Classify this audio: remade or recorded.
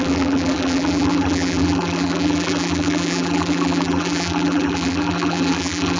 remade